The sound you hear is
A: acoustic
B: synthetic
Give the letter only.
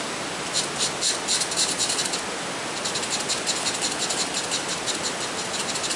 A